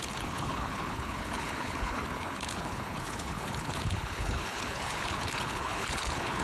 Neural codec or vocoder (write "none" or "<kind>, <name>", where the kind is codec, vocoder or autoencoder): codec, HILCodec